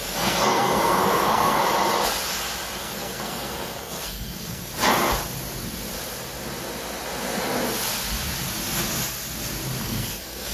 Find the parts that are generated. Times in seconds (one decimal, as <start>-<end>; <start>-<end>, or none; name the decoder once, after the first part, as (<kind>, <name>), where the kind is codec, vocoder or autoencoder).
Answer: 0.0-1.6 (codec, SNAC); 2.8-4.7; 9.8-10.5